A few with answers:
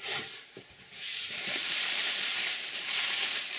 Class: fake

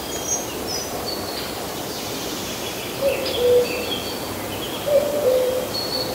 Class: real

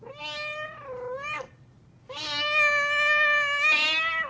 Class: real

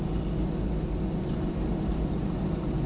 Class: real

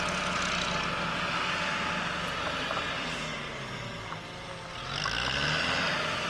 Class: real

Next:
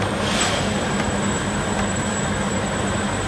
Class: fake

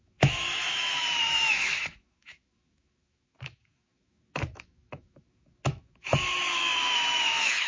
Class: fake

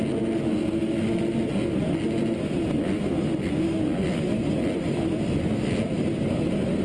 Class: real